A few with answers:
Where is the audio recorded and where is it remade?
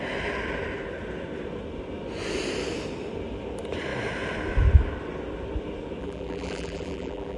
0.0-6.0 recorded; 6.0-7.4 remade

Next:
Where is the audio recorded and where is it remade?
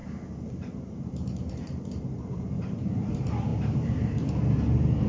0.0-3.1 remade; 3.1-3.5 recorded; 3.5-4.3 remade; 4.3-5.1 recorded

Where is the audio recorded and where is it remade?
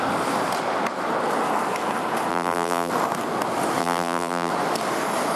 0.0-2.3 recorded; 2.3-2.9 remade; 2.9-3.8 recorded; 3.8-4.5 remade; 4.5-5.4 recorded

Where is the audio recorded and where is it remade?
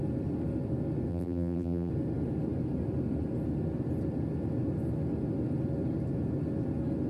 0.0-1.1 recorded; 1.1-1.9 remade; 1.9-7.1 recorded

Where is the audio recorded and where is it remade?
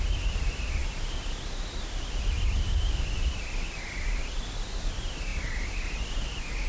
0.0-6.7 recorded